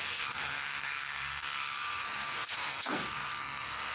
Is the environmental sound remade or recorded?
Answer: remade